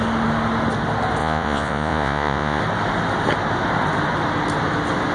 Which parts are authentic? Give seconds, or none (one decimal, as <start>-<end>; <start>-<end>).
0.0-1.2; 2.6-5.1